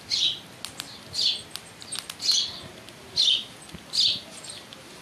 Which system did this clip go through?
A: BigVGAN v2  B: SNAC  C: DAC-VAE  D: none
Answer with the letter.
D